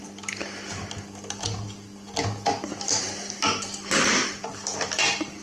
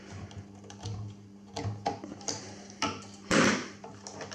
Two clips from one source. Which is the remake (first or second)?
second